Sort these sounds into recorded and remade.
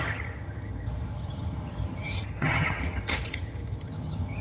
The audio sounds remade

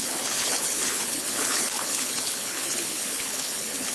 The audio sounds remade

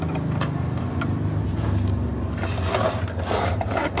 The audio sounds recorded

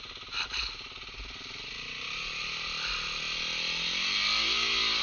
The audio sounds recorded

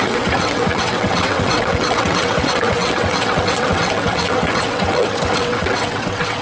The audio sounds remade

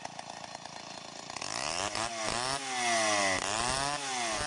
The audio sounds recorded